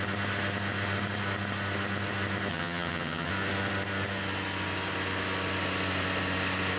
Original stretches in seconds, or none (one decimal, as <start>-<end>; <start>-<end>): 0.0-2.5; 3.3-6.8